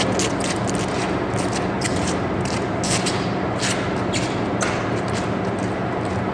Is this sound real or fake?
real